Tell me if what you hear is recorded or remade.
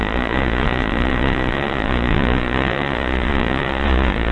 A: remade